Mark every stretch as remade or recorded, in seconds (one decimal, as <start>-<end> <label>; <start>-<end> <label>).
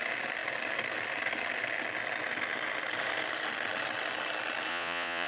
0.0-4.7 recorded; 4.7-5.3 remade